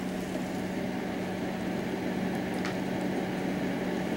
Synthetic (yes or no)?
no